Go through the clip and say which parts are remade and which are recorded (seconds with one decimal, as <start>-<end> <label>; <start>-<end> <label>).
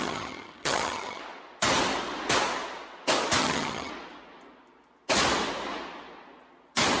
0.0-1.2 remade; 1.2-3.4 recorded; 3.4-3.9 remade; 3.9-7.0 recorded